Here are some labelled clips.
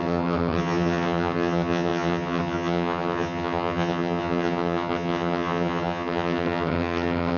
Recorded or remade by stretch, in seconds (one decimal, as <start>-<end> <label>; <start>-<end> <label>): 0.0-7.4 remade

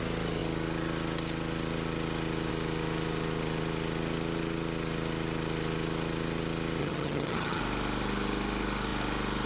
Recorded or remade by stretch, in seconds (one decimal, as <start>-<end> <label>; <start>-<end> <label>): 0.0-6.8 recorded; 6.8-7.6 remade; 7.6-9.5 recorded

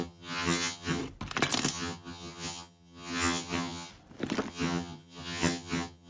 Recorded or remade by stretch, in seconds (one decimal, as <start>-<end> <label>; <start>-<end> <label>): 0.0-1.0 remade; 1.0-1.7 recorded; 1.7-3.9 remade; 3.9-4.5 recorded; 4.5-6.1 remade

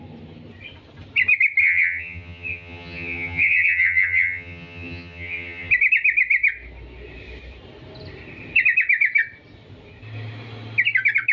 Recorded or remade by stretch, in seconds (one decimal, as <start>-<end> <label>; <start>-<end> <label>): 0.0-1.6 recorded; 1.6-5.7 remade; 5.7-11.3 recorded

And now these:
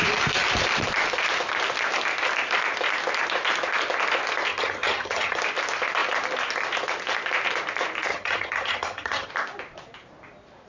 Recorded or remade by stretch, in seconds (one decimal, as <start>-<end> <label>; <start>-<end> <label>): 0.0-4.5 recorded; 4.5-5.4 remade; 5.4-8.1 recorded; 8.1-9.3 remade; 9.3-10.7 recorded

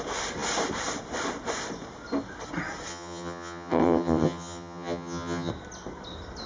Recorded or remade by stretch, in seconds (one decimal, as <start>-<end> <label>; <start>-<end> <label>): 0.0-2.9 recorded; 2.9-5.5 remade; 5.5-6.5 recorded

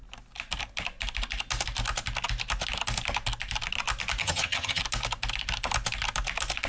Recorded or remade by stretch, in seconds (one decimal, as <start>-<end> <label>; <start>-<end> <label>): 0.0-4.2 recorded; 4.2-4.8 remade; 4.8-6.7 recorded

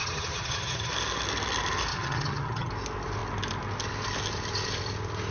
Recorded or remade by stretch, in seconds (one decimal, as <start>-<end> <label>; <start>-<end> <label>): 0.0-0.9 remade; 0.9-1.9 recorded; 1.9-2.7 remade; 2.7-5.3 recorded